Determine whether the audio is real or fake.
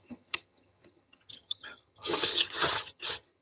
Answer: fake